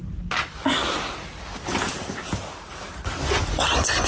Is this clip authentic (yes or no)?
yes